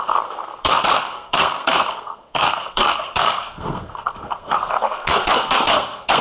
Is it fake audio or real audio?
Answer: fake